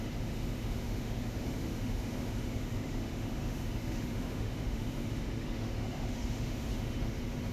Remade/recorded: remade